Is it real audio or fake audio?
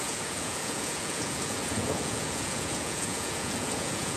fake